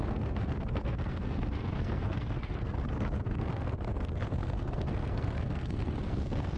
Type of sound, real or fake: fake